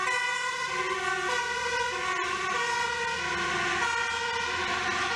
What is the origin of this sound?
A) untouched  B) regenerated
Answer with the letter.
A